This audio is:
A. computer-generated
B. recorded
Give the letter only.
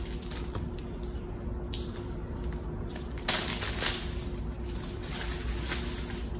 B